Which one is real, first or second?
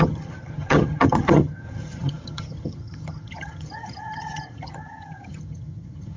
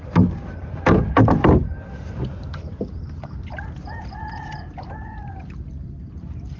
second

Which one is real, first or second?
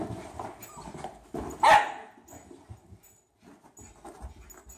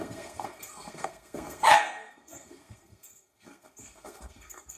first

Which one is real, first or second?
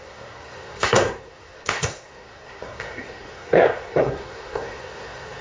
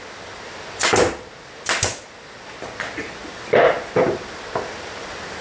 second